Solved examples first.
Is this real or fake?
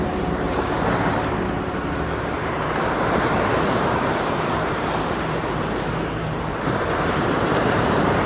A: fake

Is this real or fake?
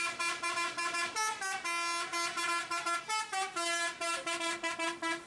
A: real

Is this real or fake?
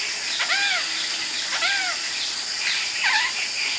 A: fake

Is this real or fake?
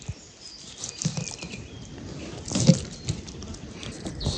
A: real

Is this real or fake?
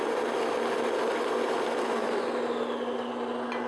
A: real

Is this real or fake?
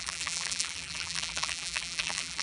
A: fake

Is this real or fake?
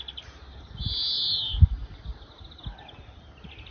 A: real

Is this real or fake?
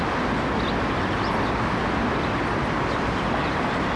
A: real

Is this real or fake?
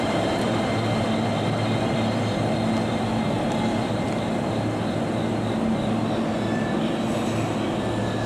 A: real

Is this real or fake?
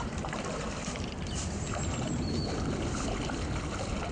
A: fake